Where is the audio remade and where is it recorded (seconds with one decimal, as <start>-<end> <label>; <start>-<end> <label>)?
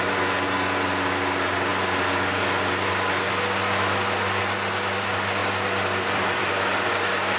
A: 0.0-5.4 recorded; 5.4-6.9 remade; 6.9-7.4 recorded